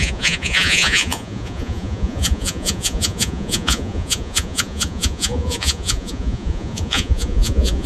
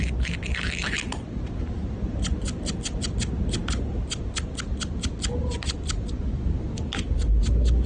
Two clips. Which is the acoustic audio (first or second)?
second